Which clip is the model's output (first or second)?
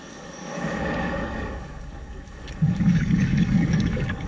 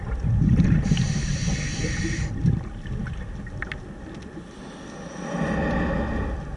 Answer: first